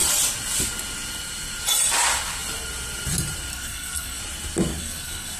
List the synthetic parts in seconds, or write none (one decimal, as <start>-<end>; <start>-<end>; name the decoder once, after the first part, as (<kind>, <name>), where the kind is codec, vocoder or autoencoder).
3.5-4.2 (codec, SNAC); 4.7-5.4